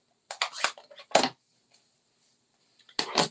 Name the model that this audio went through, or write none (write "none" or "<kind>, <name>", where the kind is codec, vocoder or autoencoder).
none